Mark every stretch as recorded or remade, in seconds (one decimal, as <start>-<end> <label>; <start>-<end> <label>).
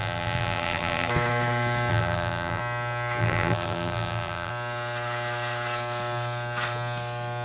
0.0-1.1 remade; 1.1-1.9 recorded; 1.9-2.6 remade; 2.6-3.2 recorded; 3.2-4.5 remade; 4.5-7.4 recorded